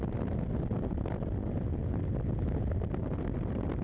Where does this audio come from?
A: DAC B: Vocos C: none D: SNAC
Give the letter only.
C